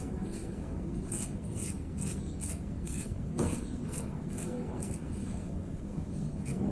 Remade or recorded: remade